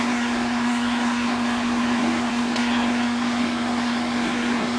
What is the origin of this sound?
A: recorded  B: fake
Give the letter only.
B